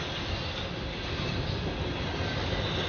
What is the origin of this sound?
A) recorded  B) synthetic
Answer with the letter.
A